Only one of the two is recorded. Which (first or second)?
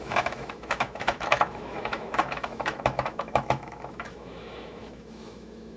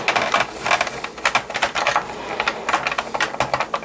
second